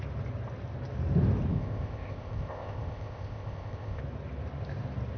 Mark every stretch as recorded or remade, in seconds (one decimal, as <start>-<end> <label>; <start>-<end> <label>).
0.0-1.5 recorded; 1.5-4.0 remade; 4.0-5.2 recorded